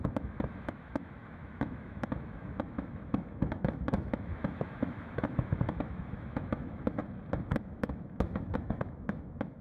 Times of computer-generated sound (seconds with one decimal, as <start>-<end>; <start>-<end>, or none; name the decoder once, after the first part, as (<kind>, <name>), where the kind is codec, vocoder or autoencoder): 0.0-7.0 (autoencoder, DAC-VAE); 7.6-9.6